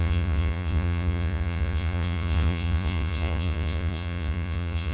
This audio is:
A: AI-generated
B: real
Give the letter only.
A